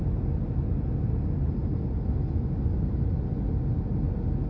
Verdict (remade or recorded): recorded